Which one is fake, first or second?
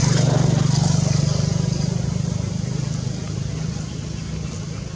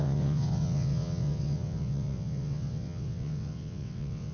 second